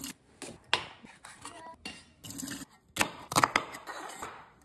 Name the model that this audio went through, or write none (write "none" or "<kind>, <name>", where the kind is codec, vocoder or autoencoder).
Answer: none